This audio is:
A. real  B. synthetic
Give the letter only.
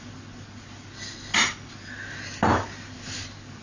A